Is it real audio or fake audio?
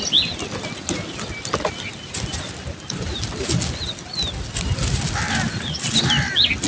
real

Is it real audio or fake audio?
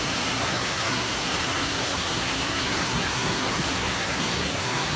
fake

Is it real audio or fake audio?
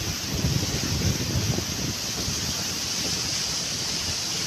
real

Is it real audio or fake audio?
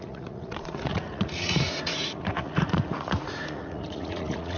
fake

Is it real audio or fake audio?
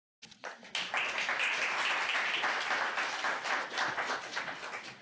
real